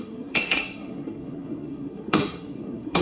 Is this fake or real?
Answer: fake